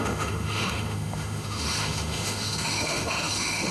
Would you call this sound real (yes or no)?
no